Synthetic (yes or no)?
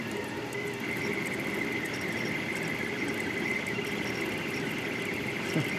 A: no